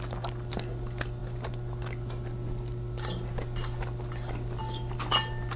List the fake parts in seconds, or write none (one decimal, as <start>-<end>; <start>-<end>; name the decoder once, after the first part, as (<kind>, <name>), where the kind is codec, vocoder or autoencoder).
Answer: none